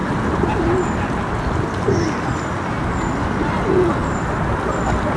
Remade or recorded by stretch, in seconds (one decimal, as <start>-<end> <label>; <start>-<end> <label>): 0.0-5.2 recorded